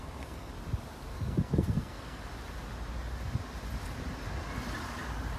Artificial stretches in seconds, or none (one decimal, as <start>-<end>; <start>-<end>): 0.0-0.5; 1.1-2.2